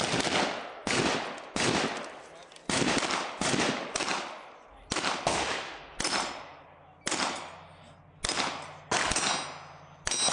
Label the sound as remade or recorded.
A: recorded